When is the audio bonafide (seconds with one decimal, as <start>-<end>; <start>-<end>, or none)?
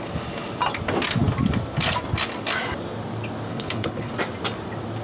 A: 0.0-3.5; 4.1-5.0